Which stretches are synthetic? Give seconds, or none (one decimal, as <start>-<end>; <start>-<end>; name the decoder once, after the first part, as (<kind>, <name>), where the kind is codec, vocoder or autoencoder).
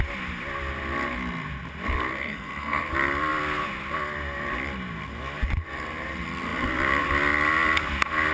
2.1-2.8 (codec, SNAC)